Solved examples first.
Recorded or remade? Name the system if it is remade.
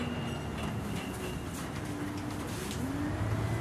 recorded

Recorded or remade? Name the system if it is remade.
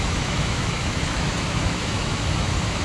remade, autoencoder, DAC-VAE